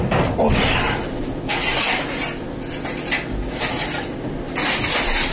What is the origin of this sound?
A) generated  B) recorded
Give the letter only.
B